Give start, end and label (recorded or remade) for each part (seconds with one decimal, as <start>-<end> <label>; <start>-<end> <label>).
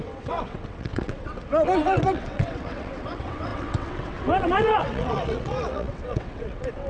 0.0-6.9 remade